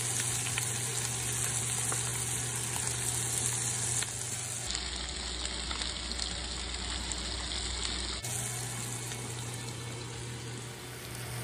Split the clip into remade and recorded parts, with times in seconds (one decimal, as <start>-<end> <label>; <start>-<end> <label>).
0.0-11.4 recorded